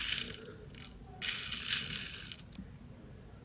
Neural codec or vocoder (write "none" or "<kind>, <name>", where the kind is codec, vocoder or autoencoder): none